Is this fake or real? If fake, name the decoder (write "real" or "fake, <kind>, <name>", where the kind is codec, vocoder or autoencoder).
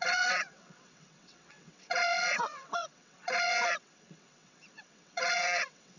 fake, vocoder, WaveNeXt